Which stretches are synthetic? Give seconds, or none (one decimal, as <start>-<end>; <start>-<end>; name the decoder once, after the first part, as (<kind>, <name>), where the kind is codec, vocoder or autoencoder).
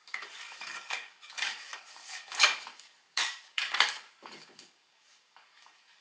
0.0-6.0 (codec, DAC)